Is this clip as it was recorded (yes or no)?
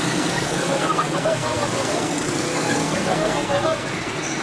no